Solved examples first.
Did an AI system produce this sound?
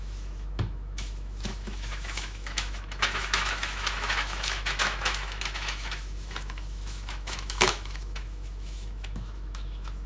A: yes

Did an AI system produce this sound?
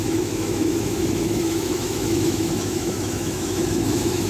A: yes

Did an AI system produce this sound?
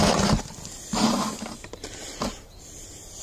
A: no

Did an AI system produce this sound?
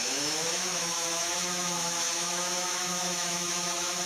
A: yes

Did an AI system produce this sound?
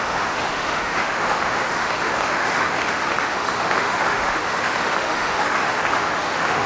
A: yes